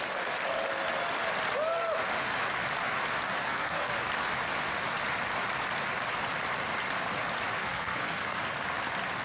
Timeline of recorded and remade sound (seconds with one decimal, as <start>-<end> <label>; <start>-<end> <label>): 0.0-3.4 recorded; 3.4-3.9 remade; 3.9-7.6 recorded; 7.6-8.4 remade; 8.4-9.2 recorded